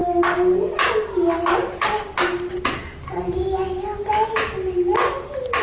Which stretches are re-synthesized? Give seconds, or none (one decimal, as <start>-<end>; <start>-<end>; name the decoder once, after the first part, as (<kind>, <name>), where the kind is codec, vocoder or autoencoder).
none